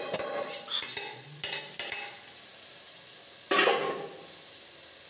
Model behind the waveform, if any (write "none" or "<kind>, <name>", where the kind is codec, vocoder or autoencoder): none